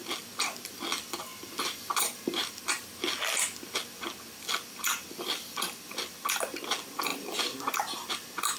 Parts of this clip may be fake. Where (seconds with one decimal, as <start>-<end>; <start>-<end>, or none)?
1.3-3.0; 7.1-8.1